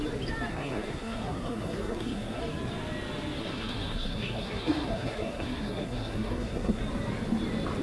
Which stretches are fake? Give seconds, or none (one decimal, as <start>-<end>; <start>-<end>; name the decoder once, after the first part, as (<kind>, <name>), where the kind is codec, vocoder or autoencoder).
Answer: 0.5-2.4 (codec, SNAC); 3.4-6.8